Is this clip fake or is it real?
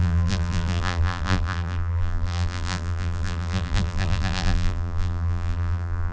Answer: fake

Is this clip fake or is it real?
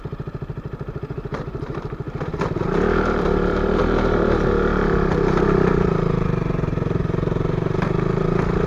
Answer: fake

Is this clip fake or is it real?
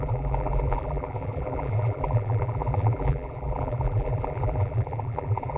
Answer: fake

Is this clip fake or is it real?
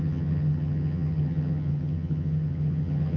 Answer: fake